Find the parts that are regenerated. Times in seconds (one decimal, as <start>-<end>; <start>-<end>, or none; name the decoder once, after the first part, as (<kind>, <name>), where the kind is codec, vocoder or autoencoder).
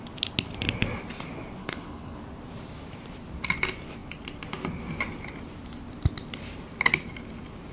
1.6-2.2 (codec, HILCodec)